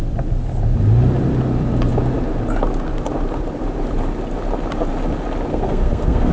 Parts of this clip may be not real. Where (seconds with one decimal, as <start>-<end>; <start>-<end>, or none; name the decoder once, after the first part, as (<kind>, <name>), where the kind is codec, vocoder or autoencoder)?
5.5-6.3 (codec, SNAC)